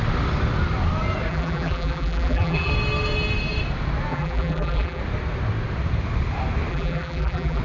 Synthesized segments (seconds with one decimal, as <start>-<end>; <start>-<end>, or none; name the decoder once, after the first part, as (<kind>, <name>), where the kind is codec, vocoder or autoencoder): 1.3-2.7 (vocoder, BigVGAN v2); 4.1-5.0; 6.7-7.6